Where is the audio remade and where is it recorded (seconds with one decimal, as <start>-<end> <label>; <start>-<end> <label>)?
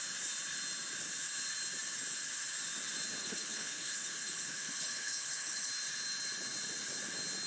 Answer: 0.0-3.2 recorded; 3.2-5.7 remade; 5.7-7.5 recorded